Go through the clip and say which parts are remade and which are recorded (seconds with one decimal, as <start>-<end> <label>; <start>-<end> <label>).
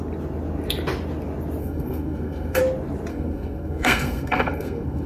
0.0-1.6 recorded; 1.6-2.6 remade; 2.6-3.1 recorded; 3.1-5.1 remade